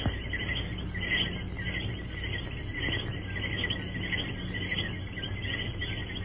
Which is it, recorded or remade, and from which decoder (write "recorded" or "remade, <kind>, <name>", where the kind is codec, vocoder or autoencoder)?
recorded